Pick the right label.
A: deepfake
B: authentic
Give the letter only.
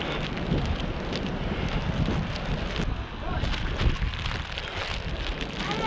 B